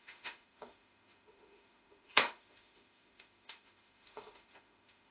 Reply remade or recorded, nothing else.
remade